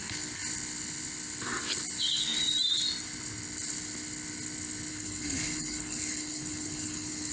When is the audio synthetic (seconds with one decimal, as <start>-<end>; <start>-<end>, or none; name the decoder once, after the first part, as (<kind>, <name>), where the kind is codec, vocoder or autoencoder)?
4.9-7.3 (codec, HILCodec)